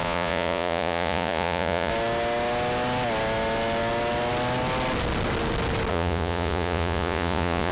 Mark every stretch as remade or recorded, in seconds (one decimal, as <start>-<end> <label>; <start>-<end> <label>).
0.0-1.9 remade; 1.9-5.9 recorded; 5.9-7.7 remade